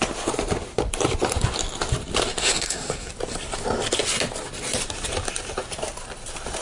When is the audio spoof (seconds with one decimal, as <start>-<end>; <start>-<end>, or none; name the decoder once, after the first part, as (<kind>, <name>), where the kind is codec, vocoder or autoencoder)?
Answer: 2.4-3.1 (codec, SNAC)